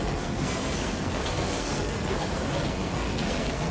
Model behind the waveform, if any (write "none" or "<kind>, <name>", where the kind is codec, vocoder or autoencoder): codec, SNAC